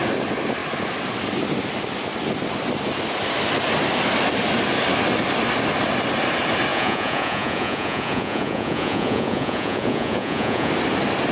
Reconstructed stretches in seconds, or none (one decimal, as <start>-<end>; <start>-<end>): 6.7-10.7